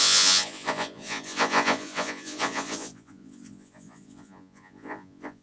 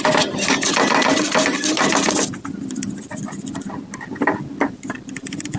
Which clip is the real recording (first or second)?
second